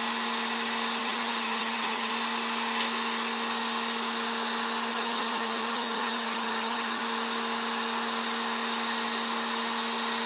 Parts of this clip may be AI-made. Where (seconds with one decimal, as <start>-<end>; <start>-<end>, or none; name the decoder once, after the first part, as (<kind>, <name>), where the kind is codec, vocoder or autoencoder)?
1.0-2.1 (vocoder, HiFi-GAN); 4.9-7.0